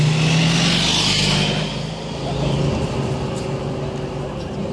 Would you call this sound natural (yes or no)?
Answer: yes